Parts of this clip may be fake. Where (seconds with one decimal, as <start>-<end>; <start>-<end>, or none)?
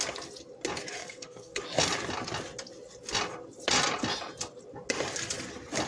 1.0-1.6